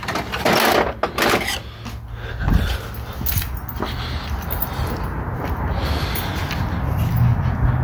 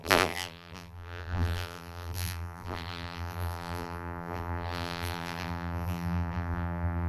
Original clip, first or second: first